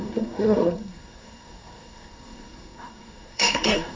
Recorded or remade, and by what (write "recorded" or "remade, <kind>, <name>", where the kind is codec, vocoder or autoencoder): remade, codec, SNAC